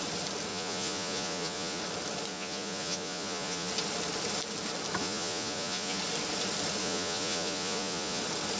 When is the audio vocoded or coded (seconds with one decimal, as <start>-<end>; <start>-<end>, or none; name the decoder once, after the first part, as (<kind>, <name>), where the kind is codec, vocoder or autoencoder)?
0.5-1.8 (vocoder, Vocos); 2.3-3.7; 5.0-6.0; 6.8-8.2